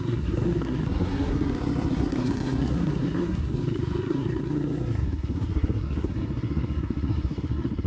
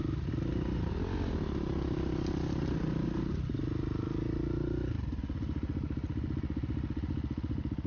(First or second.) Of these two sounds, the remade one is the first